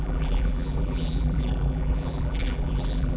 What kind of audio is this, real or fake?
fake